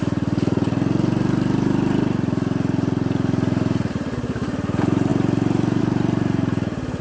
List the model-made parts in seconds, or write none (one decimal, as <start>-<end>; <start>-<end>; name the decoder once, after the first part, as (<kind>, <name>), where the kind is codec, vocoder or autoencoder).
none